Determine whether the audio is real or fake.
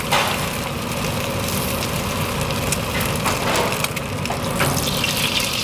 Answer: real